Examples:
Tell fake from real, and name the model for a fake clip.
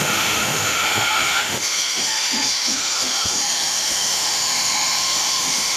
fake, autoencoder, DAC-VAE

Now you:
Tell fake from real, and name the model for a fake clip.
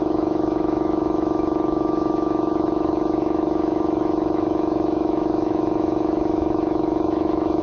fake, autoencoder, DAC-VAE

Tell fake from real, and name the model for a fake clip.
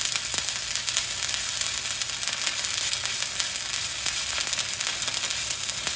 real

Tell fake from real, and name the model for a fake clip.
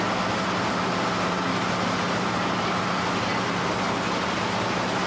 real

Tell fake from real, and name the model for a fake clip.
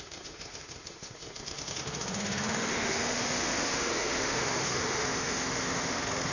fake, autoencoder, DAC-VAE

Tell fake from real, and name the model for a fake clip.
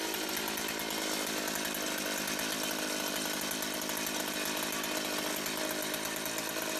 real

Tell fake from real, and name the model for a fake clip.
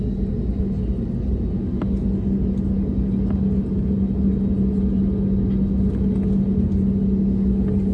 real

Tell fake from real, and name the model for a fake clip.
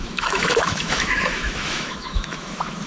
fake, autoencoder, DAC-VAE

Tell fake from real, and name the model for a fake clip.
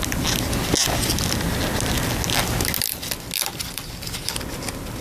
real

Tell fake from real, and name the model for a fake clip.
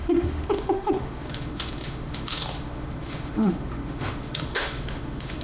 fake, autoencoder, DAC-VAE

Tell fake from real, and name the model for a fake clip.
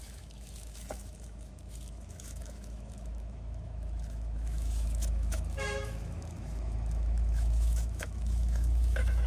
fake, autoencoder, DAC-VAE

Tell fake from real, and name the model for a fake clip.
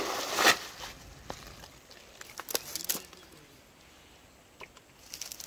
real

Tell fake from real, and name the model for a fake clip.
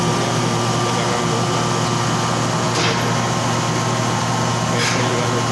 real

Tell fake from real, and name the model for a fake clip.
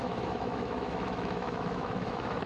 fake, autoencoder, DAC-VAE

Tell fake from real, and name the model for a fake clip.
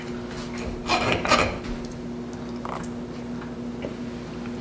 real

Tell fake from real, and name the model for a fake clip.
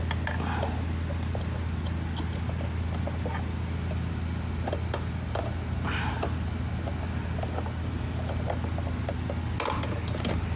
real